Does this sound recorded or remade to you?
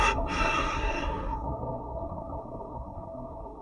remade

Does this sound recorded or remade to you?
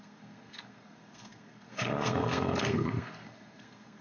remade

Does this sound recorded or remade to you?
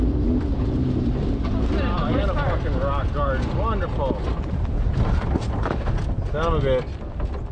recorded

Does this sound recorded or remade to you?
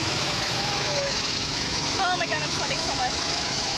remade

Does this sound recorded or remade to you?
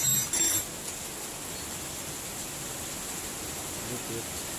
recorded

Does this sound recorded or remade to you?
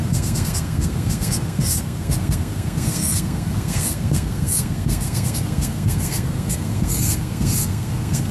remade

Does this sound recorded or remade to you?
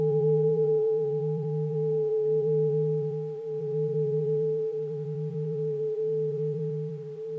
remade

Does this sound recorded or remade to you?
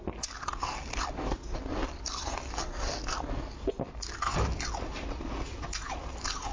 recorded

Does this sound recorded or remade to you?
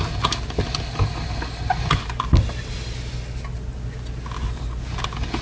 recorded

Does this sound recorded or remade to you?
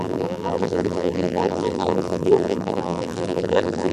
remade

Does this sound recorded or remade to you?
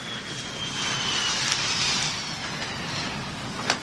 recorded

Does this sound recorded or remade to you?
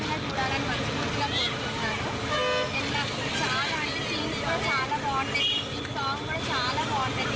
recorded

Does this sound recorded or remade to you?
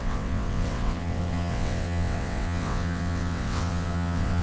remade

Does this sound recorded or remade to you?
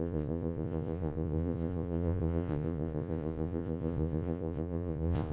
remade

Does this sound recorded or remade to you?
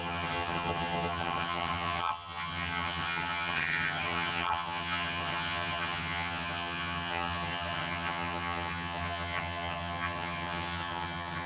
remade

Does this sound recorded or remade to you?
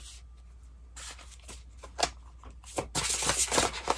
recorded